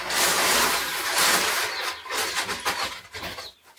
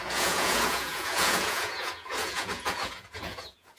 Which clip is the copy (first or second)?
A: second